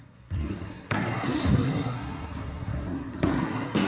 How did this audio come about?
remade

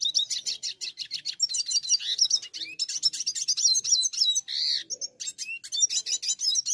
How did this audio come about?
recorded